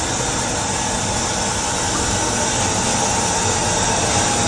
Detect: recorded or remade recorded